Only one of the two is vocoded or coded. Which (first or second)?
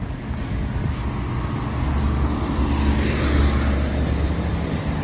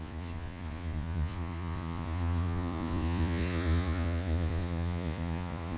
second